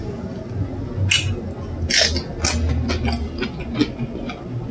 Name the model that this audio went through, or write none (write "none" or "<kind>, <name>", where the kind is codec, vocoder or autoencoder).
none